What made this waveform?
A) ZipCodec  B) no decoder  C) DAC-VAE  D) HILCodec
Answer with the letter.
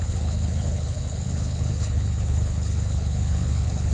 D